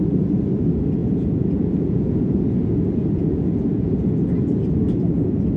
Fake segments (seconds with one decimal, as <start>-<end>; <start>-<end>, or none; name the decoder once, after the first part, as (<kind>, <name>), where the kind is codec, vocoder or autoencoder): 1.0-4.3 (vocoder, Vocos)